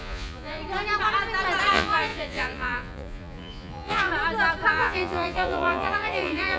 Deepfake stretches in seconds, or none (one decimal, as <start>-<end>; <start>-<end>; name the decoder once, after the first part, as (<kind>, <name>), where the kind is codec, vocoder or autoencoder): 0.0-0.6 (vocoder, Vocos); 1.7-4.1; 4.7-6.6

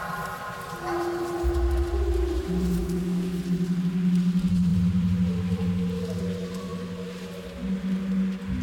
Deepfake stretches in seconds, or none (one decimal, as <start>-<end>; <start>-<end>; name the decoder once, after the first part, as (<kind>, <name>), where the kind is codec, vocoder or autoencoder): 2.8-3.4 (codec, DAC)

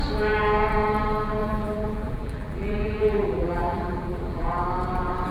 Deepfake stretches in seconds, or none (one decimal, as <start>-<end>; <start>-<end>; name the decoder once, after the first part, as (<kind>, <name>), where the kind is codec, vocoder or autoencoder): 1.4-4.6 (vocoder, BigVGAN v2)

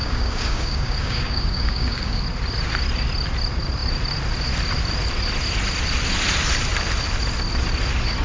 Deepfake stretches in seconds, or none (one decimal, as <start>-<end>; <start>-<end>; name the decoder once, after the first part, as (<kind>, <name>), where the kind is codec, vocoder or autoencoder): 0.0-2.2 (codec, DAC)

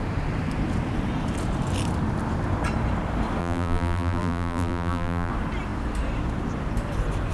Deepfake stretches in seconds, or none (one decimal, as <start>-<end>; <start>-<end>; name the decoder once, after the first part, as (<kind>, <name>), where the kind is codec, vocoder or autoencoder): 3.4-5.3 (vocoder, BigVGAN v2)